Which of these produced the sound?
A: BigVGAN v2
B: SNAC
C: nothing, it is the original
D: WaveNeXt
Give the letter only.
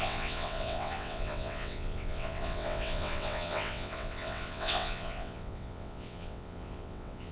D